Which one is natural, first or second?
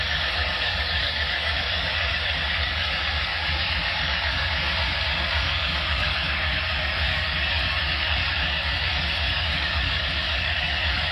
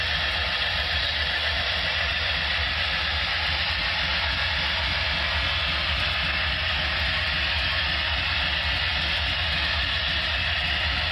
second